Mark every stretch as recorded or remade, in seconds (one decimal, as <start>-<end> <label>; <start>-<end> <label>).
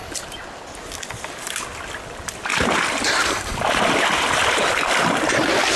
0.0-5.8 recorded